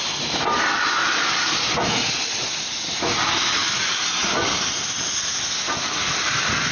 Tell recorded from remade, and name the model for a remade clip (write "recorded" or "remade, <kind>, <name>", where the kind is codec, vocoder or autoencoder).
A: recorded